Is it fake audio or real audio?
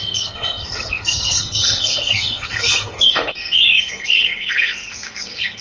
fake